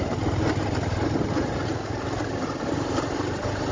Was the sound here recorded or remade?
recorded